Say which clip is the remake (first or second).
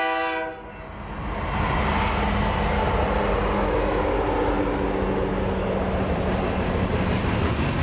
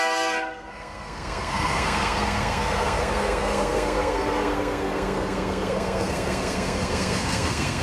second